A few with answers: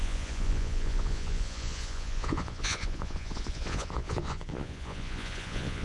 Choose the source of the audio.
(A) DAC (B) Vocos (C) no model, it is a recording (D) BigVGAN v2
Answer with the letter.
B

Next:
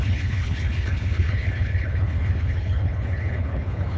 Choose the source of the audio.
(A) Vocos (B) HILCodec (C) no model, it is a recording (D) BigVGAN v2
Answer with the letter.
B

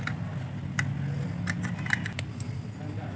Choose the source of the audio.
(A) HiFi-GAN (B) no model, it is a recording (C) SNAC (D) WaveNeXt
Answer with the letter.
B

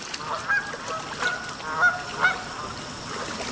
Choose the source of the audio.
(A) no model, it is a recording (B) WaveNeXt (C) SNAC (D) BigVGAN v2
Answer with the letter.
A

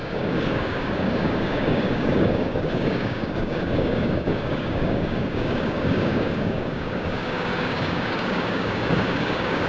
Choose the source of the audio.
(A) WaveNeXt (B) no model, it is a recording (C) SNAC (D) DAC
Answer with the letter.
D